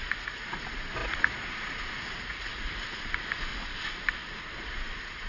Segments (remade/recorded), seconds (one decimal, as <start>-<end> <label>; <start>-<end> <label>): 0.0-3.5 remade; 3.5-4.3 recorded; 4.3-5.3 remade